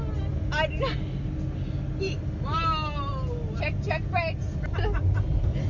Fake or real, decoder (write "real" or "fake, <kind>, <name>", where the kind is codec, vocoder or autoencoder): real